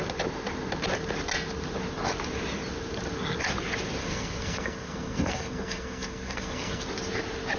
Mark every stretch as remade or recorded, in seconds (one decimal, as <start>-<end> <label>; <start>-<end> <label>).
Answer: 0.0-4.0 recorded; 4.0-6.8 remade; 6.8-7.6 recorded